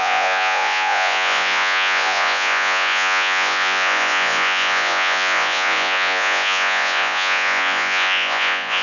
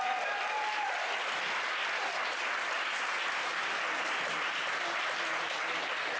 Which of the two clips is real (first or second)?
second